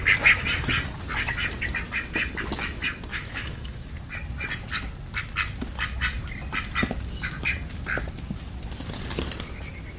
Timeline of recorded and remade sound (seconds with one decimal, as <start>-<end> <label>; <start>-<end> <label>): 0.0-3.1 recorded; 3.1-3.9 remade; 3.9-10.0 recorded